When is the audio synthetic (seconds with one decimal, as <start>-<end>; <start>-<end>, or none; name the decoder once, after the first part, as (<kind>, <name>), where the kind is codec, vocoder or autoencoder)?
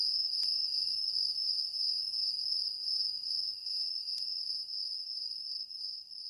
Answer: 5.3-6.3 (vocoder, BigVGAN v2)